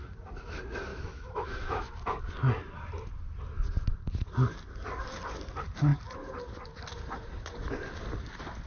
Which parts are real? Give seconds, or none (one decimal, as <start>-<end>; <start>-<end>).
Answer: 0.0-0.9; 1.9-8.7